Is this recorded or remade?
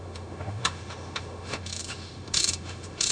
remade